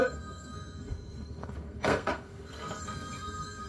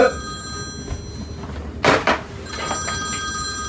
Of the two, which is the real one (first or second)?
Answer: second